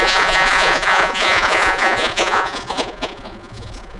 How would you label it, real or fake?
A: fake